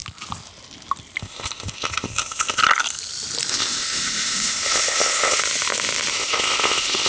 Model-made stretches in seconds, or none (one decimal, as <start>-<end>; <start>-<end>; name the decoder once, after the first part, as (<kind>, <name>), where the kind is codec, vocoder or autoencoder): 1.2-2.6 (codec, ZipCodec); 3.5-5.4; 6.1-7.1